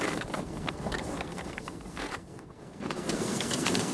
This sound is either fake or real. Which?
fake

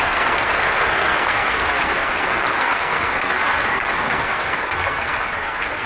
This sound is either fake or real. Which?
fake